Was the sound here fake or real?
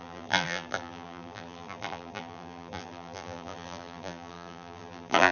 fake